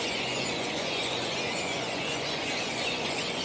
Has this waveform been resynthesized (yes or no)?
yes